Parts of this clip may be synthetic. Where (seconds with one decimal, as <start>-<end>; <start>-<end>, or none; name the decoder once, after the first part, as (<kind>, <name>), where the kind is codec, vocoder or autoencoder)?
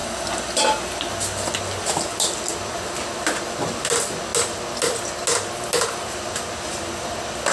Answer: none